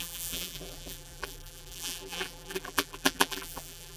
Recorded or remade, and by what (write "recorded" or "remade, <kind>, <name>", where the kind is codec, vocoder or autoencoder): remade, vocoder, BigVGAN v2